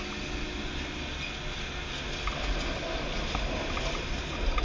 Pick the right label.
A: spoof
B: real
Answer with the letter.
B